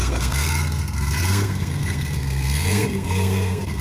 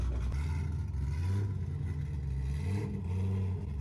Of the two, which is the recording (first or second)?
second